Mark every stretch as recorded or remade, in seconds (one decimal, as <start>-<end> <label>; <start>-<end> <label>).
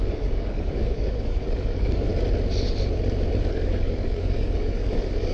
0.0-2.1 remade; 2.1-3.5 recorded; 3.5-5.3 remade